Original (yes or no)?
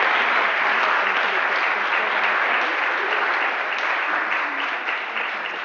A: yes